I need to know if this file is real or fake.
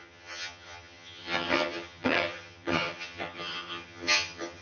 fake